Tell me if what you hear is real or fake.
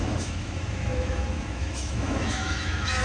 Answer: fake